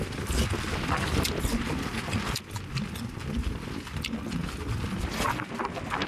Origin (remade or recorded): recorded